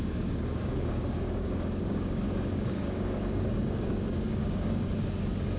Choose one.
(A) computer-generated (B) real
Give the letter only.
A